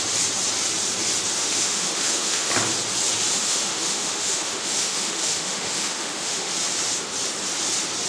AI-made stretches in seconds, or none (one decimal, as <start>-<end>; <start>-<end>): 1.4-2.5; 3.4-6.5